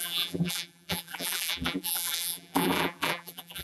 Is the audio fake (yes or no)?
yes